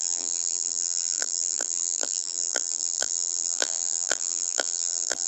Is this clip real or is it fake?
fake